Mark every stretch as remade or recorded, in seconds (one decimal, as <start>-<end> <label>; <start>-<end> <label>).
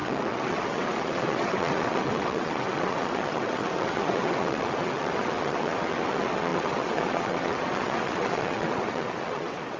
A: 0.0-9.8 remade